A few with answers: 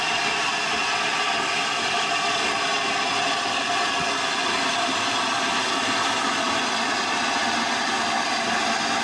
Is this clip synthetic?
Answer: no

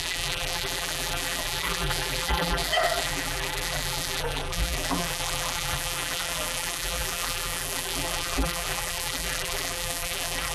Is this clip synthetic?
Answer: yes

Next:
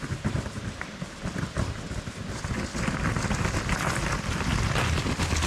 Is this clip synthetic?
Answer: no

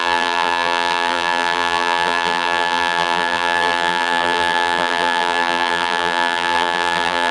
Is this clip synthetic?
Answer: yes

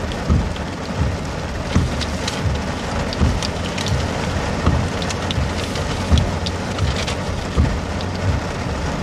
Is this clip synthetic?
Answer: no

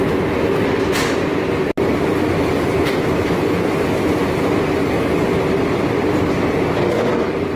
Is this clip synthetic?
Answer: no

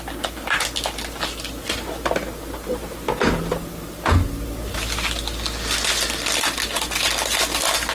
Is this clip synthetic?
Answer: no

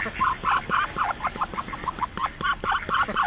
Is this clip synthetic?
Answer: no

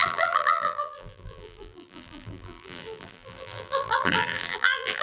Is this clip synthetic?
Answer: yes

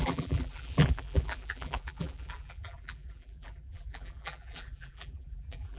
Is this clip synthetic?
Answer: yes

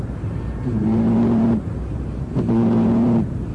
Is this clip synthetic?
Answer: yes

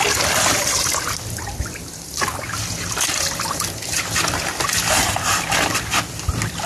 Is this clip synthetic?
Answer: yes